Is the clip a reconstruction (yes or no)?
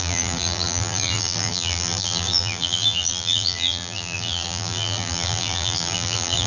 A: yes